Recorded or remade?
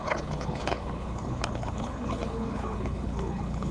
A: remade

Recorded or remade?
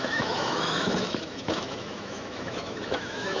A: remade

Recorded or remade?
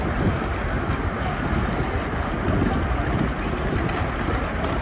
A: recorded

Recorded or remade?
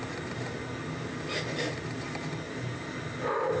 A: recorded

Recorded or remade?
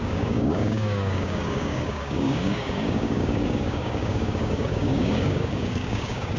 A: remade